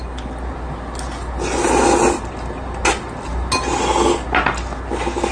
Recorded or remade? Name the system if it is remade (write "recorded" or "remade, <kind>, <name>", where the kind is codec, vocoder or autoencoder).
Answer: recorded